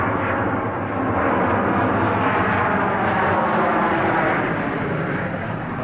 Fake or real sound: real